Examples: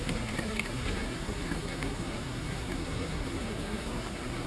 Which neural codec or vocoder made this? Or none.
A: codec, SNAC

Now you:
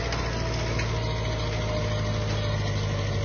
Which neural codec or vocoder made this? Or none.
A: none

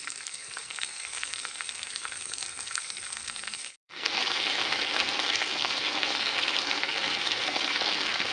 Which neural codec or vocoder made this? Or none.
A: codec, SNAC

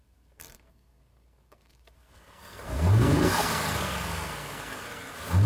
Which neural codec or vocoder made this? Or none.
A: codec, SNAC